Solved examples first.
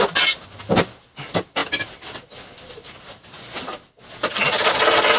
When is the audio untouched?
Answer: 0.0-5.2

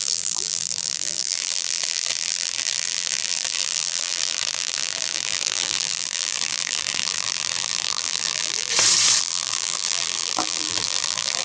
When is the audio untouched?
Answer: 8.7-9.2

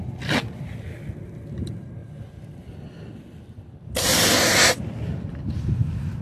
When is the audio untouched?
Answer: 0.0-6.2

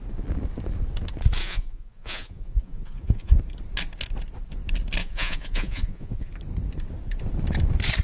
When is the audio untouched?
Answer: 0.0-1.4; 3.4-5.0; 6.3-8.0

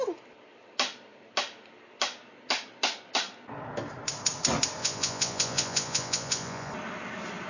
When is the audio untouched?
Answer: 0.0-4.8; 6.7-7.5

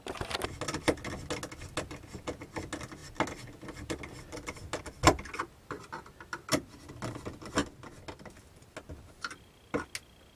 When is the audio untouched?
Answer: 0.0-10.4

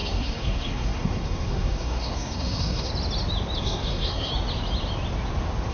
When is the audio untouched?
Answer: 2.9-3.6; 4.3-5.7

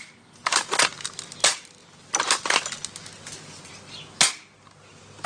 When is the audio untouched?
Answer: 0.0-5.3